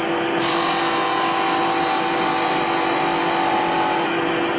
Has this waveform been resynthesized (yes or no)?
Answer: no